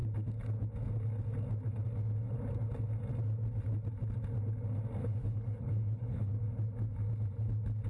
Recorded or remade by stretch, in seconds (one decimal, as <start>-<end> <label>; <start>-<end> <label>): 0.0-5.0 recorded; 5.0-6.3 remade; 6.3-7.9 recorded